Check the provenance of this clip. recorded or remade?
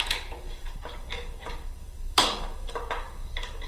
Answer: remade